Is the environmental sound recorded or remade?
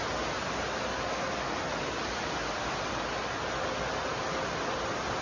recorded